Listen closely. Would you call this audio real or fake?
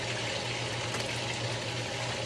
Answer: real